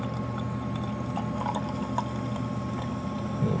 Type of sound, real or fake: real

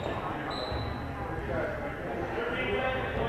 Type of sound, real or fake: real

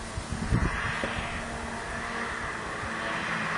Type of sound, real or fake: real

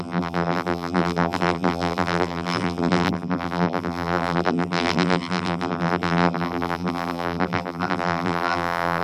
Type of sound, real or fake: fake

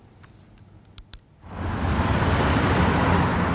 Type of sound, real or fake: real